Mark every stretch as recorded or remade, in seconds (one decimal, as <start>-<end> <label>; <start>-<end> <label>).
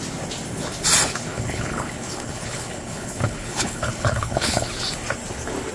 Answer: 0.0-1.3 recorded; 1.3-4.7 remade; 4.7-5.7 recorded